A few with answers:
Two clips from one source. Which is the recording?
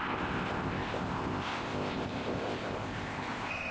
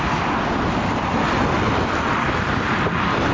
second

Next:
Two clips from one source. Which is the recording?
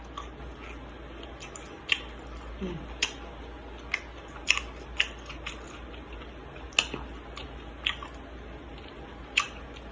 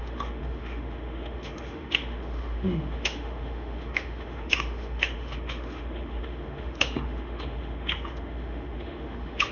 first